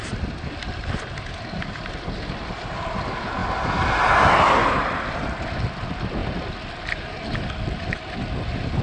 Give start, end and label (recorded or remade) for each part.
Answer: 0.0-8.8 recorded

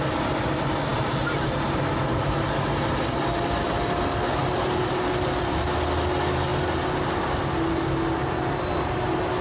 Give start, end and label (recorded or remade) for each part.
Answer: 0.0-9.4 recorded